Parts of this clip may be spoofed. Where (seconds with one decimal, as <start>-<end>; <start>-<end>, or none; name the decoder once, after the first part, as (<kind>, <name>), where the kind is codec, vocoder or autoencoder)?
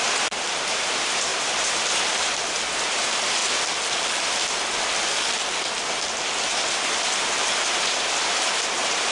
0.0-3.4 (vocoder, BigVGAN v2); 6.5-9.1